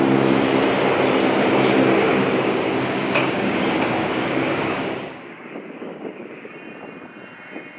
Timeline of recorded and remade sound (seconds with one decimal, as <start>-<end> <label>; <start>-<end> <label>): 0.0-2.1 recorded; 2.1-6.5 remade; 6.5-7.8 recorded